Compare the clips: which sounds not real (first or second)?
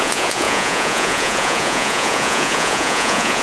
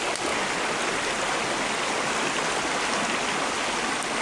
first